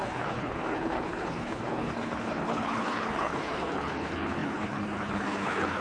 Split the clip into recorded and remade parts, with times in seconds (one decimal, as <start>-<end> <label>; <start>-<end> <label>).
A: 0.0-5.8 remade